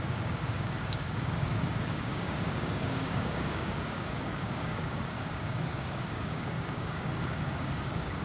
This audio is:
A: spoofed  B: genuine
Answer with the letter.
A